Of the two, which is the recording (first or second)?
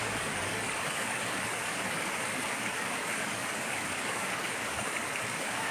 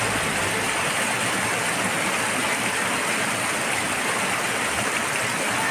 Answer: second